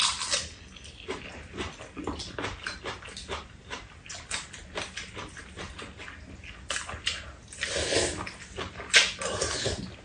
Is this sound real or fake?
real